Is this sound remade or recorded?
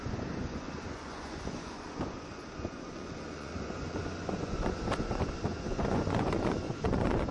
remade